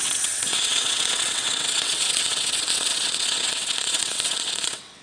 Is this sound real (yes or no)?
no